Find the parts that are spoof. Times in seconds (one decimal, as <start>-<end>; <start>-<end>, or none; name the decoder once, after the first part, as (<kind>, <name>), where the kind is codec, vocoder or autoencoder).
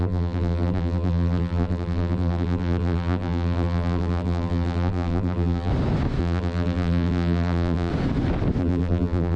0.0-5.7 (vocoder, BigVGAN v2); 6.2-7.9; 8.6-9.4